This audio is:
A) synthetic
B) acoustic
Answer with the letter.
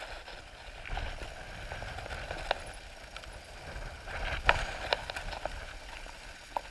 B